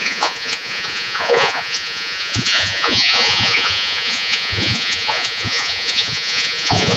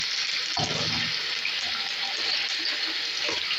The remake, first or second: first